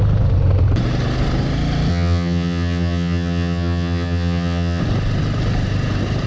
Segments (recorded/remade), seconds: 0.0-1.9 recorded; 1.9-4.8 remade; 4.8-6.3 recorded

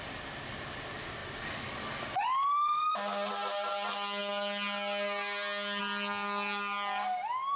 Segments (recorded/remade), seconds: 0.0-7.6 recorded

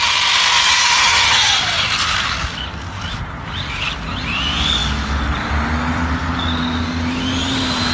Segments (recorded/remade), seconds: 0.0-1.0 recorded; 1.0-1.6 remade; 1.6-7.9 recorded